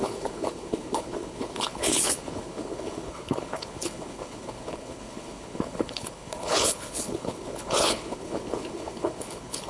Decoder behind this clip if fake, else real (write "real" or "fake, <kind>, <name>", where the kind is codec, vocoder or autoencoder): fake, codec, HILCodec